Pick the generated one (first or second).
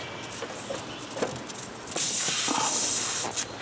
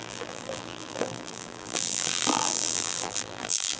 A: second